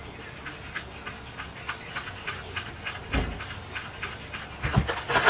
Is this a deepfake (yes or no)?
no